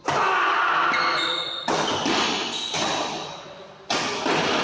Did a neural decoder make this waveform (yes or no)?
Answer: no